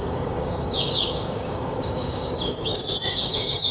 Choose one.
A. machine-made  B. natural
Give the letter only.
A